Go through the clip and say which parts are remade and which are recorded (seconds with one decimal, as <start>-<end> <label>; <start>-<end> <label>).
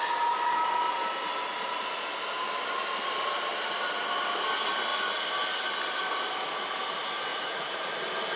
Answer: 0.0-7.3 recorded; 7.3-7.9 remade; 7.9-8.4 recorded